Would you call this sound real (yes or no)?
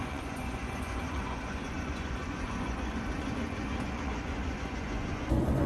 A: no